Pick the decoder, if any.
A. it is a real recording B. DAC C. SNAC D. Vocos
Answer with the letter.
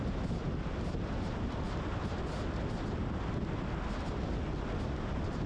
A